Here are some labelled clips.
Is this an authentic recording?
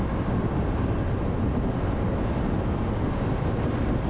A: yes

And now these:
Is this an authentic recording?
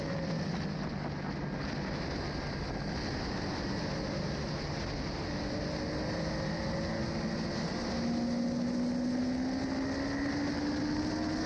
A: yes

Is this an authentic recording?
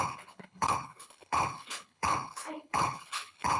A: no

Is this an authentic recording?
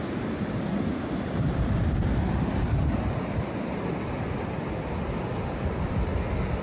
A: yes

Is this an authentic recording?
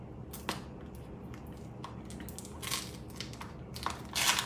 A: yes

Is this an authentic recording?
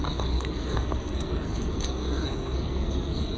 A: no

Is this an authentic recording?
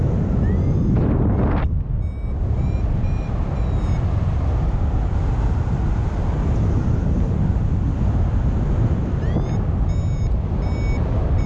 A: yes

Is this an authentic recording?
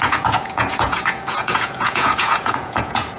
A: no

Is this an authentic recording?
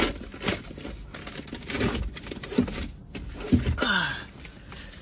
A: yes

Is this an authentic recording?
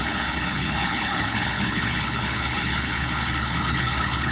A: no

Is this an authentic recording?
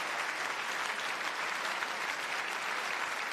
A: yes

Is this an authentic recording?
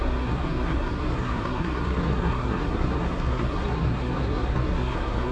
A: no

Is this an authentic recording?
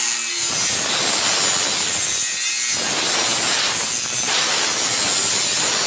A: yes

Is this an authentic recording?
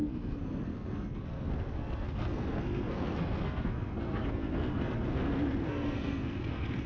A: no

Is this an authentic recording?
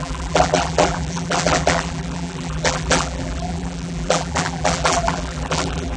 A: no